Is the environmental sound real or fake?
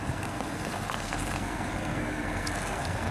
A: fake